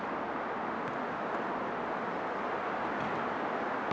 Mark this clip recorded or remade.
recorded